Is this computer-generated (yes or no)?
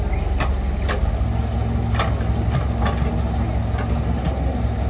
no